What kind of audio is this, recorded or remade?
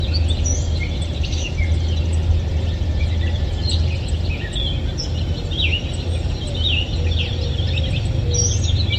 recorded